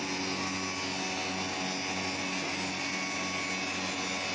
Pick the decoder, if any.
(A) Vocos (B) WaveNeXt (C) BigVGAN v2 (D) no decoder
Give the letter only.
D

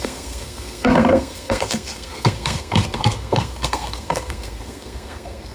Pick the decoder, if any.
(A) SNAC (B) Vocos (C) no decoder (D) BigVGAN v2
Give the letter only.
A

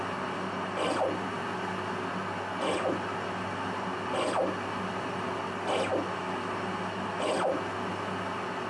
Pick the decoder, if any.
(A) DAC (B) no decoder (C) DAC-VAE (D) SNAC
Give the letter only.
B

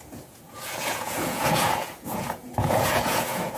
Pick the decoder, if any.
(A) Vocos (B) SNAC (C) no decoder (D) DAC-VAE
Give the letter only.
A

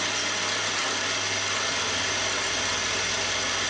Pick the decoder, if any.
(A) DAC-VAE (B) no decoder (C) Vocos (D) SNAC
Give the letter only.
B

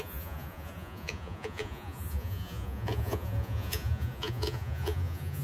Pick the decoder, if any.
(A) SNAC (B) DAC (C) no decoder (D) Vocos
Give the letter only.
D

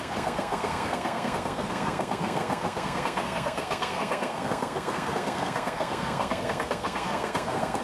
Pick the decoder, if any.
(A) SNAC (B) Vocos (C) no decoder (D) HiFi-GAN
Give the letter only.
A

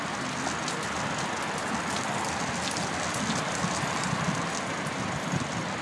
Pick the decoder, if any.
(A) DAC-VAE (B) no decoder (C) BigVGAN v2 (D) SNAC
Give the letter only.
B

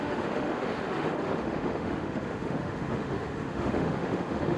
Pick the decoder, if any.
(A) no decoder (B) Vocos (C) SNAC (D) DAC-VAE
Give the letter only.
D